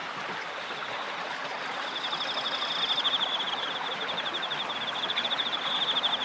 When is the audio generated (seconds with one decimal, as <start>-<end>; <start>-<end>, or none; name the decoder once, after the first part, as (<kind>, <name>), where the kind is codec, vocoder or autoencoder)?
none